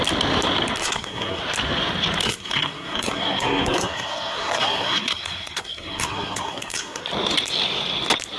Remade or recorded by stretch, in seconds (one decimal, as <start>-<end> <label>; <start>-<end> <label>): 0.0-0.8 recorded; 0.8-1.4 remade; 1.4-2.2 recorded; 2.2-7.0 remade; 7.0-8.4 recorded